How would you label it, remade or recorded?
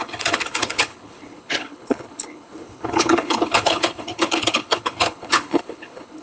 remade